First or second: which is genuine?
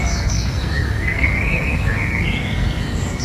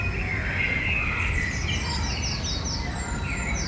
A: second